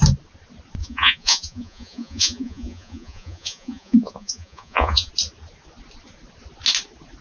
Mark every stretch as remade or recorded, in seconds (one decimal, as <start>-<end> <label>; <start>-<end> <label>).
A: 0.0-0.8 recorded; 0.8-5.1 remade; 5.1-7.2 recorded